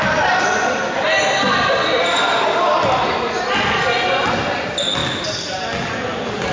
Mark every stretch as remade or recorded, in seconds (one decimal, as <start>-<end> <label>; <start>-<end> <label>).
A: 0.0-6.5 recorded